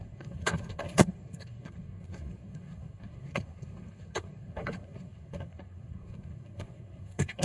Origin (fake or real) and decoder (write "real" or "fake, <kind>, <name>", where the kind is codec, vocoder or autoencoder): fake, codec, SNAC